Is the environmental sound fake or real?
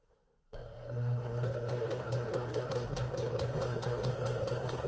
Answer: fake